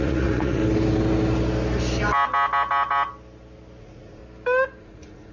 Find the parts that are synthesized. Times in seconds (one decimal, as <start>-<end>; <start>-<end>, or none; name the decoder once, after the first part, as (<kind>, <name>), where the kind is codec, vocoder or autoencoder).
0.0-0.6 (vocoder, Vocos); 3.8-4.2; 4.8-5.3